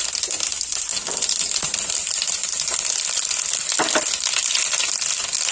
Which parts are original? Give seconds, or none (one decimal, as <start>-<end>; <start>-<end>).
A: 0.0-5.5